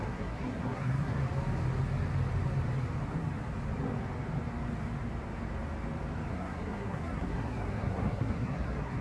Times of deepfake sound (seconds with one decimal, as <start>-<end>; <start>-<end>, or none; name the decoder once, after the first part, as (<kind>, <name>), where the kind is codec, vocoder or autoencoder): 0.0-1.2 (codec, SNAC); 6.3-9.0